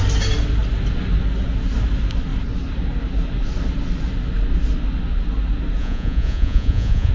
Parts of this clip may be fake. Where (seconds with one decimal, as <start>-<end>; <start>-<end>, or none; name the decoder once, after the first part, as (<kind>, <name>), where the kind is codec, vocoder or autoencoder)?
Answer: 5.8-7.1 (vocoder, Vocos)